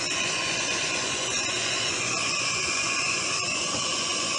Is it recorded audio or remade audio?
remade